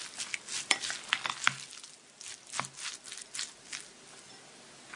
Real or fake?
real